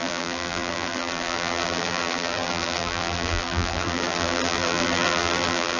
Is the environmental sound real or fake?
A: fake